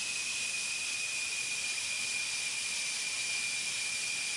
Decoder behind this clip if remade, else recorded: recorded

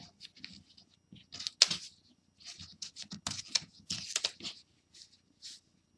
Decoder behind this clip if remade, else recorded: recorded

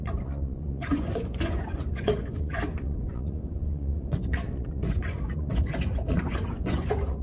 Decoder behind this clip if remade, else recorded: remade, vocoder, Vocos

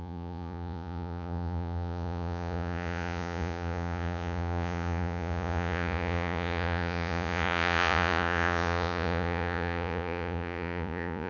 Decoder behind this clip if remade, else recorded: remade, vocoder, Vocos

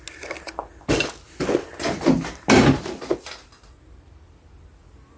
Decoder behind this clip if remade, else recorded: recorded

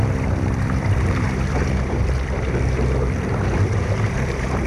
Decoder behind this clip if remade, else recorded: remade, vocoder, BigVGAN v2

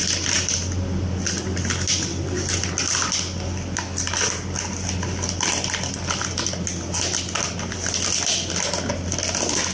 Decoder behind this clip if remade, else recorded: recorded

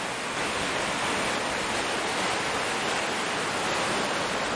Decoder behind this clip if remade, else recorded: recorded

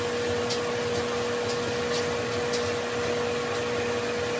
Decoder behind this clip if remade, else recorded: recorded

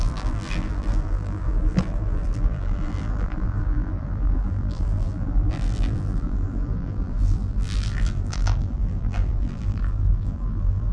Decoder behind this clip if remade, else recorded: remade, vocoder, BigVGAN v2